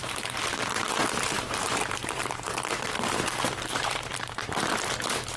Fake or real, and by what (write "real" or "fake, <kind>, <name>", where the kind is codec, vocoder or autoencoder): fake, vocoder, BigVGAN v2